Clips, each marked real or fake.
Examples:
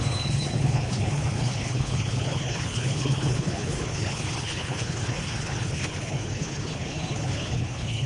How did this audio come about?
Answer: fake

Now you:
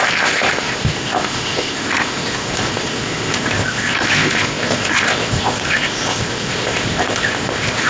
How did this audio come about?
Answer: fake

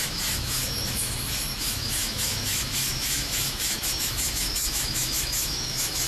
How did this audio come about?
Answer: fake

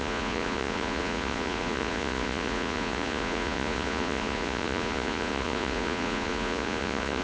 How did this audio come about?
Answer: fake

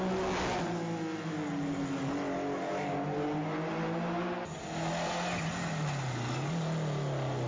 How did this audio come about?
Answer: real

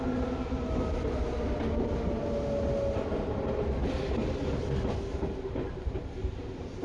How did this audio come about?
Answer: real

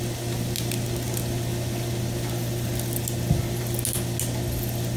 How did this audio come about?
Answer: real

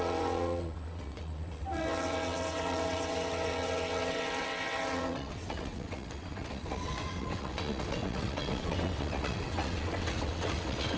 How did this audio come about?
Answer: fake